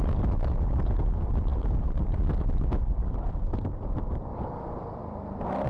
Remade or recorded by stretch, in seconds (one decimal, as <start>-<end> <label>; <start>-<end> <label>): 0.0-0.8 recorded; 0.8-5.0 remade; 5.0-5.7 recorded